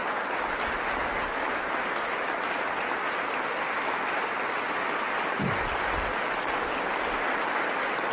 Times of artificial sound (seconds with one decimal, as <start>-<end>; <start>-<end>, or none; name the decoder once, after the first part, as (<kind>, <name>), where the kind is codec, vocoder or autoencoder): none